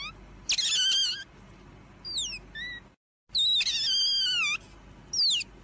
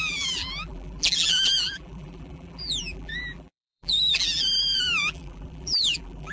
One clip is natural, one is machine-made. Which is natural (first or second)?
first